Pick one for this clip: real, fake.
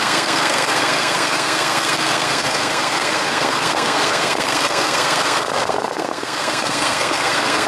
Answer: fake